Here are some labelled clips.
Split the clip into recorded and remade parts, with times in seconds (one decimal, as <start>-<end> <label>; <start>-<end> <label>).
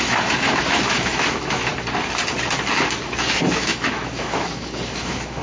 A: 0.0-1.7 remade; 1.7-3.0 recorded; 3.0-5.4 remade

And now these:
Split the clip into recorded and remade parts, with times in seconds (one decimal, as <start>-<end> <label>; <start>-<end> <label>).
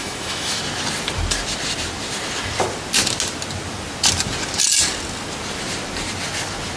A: 0.0-0.6 remade; 0.6-6.8 recorded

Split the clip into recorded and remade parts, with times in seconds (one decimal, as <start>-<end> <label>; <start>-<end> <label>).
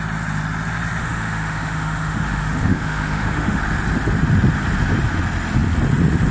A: 0.0-1.0 recorded; 1.0-3.6 remade; 3.6-6.3 recorded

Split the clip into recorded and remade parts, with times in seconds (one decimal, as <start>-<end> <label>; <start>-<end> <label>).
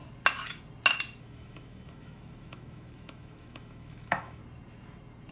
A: 0.0-1.2 recorded; 1.2-4.4 remade; 4.4-5.3 recorded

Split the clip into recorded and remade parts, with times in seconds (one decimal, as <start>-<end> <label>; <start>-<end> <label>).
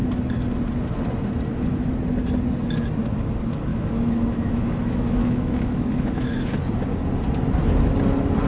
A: 0.0-3.7 recorded; 3.7-6.5 remade; 6.5-8.5 recorded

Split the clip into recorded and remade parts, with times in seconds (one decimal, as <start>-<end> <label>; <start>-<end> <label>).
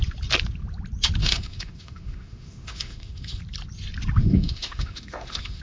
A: 0.0-1.2 recorded; 1.2-3.4 remade; 3.4-4.2 recorded; 4.2-5.6 remade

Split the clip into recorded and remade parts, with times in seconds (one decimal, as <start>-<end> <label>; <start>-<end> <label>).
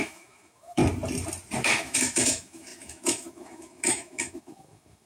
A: 0.0-0.8 remade; 0.8-1.6 recorded; 1.6-5.1 remade